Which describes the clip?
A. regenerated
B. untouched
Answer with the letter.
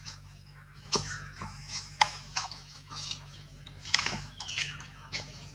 A